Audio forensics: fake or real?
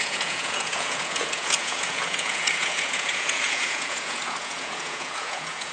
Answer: fake